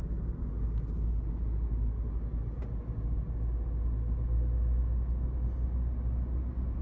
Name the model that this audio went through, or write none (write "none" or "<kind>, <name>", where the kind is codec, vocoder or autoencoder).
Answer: none